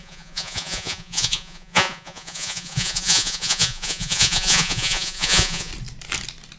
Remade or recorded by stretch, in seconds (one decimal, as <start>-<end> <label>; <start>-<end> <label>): 0.0-5.7 remade; 5.7-6.6 recorded